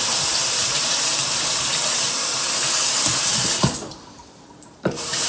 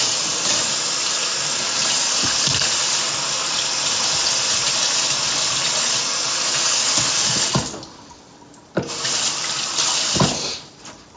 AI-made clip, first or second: first